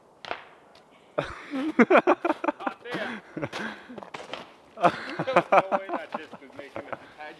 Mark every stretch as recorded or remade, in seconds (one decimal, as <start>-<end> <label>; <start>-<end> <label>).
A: 0.0-0.7 recorded; 0.7-2.0 remade; 2.0-4.3 recorded; 4.3-4.9 remade; 4.9-7.4 recorded